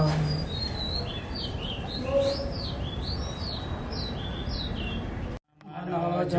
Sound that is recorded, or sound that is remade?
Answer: recorded